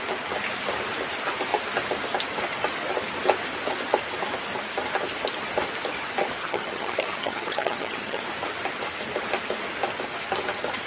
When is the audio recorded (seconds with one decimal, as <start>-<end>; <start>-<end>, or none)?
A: 0.0-6.4; 8.2-10.9